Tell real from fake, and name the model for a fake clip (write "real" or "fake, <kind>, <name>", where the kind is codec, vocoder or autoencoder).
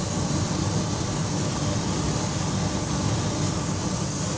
real